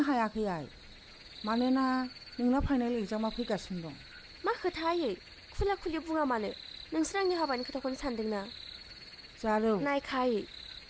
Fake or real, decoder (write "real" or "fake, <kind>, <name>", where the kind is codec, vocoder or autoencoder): real